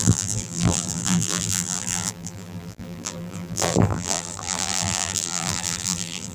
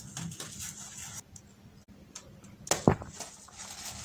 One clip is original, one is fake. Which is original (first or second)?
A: second